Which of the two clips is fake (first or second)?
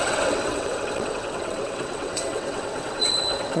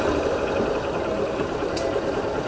first